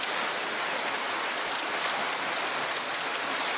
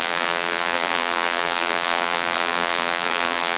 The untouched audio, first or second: first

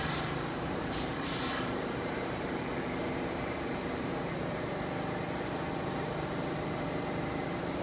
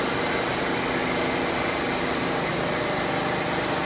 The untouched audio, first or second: second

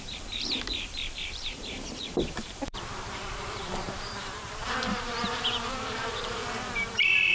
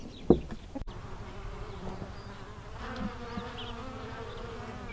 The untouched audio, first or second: second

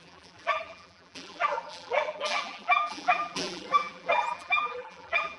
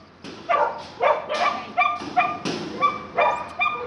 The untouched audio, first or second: second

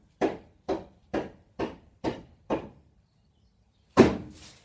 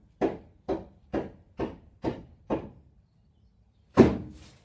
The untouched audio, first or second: second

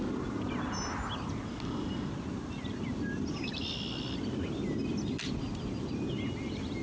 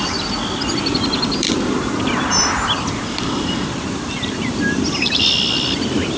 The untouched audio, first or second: first